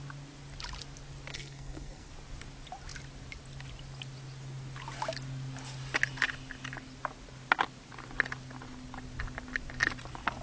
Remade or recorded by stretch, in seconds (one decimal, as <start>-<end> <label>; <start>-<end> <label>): 0.0-1.3 recorded; 1.3-2.1 remade; 2.1-10.4 recorded